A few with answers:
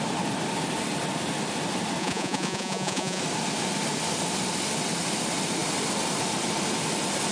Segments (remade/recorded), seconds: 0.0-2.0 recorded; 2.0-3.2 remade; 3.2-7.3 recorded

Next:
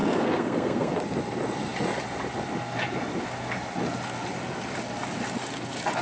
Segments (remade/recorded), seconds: 0.0-1.0 remade; 1.0-6.0 recorded

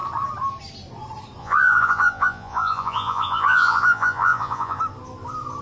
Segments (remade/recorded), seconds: 0.0-1.4 recorded; 1.4-4.8 remade; 4.8-5.6 recorded

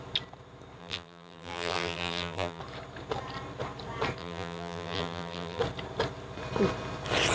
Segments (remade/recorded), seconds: 0.0-0.8 recorded; 0.8-2.6 remade; 2.6-4.2 recorded; 4.2-5.6 remade; 5.6-7.3 recorded

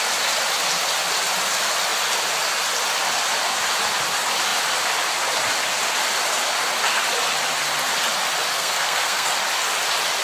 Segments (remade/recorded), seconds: 0.0-8.5 recorded; 8.5-9.3 remade; 9.3-10.2 recorded